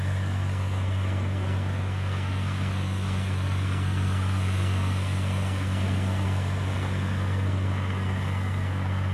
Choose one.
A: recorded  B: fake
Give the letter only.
B